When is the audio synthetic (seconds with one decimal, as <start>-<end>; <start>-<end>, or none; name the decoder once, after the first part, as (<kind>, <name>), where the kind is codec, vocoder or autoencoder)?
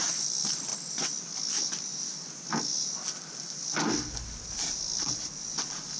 none